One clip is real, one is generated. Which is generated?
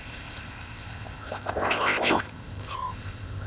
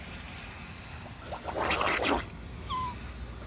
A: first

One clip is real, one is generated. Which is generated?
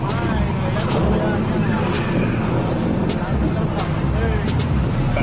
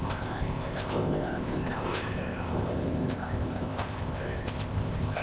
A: second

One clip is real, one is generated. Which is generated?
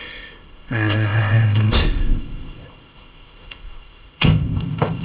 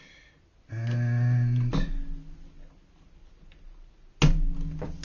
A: first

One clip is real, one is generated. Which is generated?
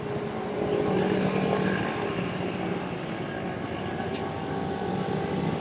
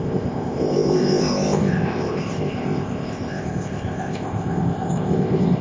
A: second